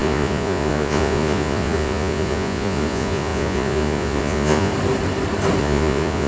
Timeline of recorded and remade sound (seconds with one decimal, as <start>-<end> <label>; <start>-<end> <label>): 0.0-4.7 remade; 4.7-5.6 recorded; 5.6-6.3 remade